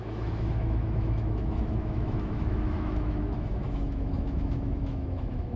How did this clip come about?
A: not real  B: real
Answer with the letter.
A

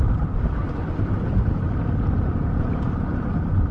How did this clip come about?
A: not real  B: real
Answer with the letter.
A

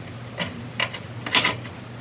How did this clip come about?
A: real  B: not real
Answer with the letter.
A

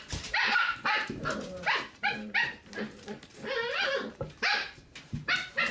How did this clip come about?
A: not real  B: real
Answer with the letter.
A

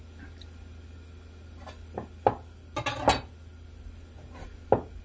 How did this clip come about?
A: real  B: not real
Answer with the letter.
A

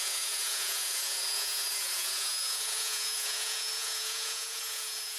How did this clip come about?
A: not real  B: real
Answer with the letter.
A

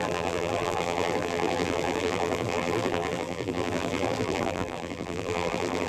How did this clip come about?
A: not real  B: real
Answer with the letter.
A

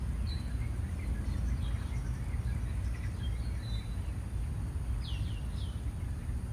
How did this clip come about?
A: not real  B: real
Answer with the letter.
B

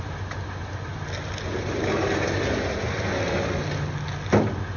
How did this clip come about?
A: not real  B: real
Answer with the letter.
B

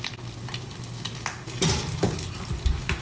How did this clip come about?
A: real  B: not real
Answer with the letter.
A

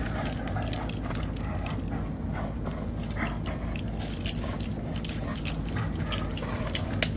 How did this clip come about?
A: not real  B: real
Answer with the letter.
B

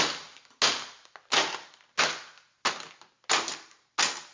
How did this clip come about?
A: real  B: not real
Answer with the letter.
A